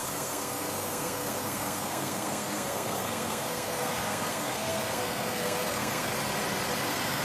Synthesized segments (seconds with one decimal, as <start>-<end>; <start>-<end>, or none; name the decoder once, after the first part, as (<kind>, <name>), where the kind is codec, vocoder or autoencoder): 0.0-6.1 (codec, SNAC); 6.8-7.2